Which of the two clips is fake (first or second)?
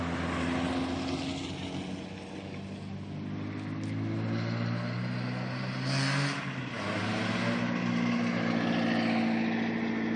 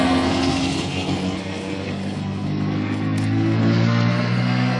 second